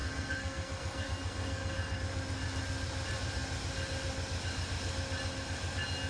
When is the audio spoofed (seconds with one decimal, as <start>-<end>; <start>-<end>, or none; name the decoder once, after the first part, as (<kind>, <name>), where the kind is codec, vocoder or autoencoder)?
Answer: 0.0-2.0 (codec, SNAC)